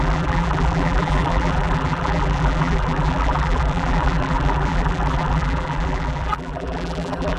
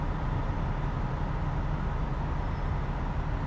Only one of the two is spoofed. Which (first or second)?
first